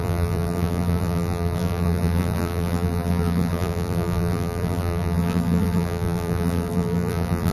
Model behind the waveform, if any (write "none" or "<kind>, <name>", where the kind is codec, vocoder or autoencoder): vocoder, BigVGAN v2